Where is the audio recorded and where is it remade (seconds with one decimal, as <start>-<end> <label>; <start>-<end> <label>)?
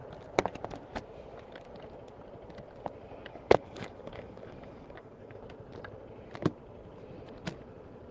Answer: 0.0-3.3 recorded; 3.3-5.4 remade; 5.4-8.1 recorded